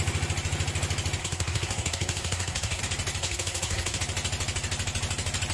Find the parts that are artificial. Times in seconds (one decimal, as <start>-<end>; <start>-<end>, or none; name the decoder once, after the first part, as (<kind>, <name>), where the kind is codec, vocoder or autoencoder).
1.2-2.8 (codec, SNAC); 3.2-4.0